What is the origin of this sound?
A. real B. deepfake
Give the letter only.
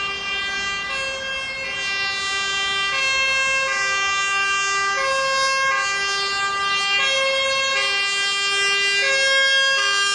A